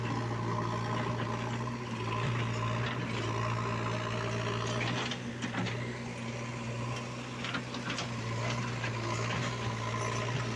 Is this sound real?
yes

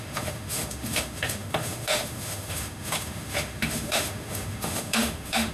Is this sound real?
no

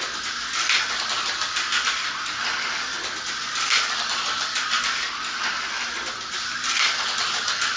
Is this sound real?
yes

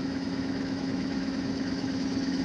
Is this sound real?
no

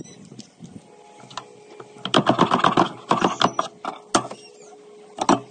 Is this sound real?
yes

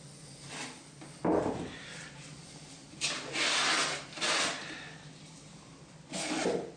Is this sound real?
yes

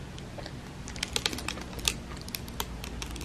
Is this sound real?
yes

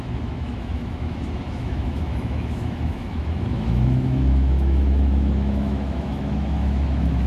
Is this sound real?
no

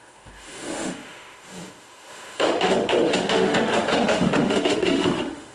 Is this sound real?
no